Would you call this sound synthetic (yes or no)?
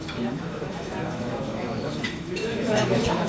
yes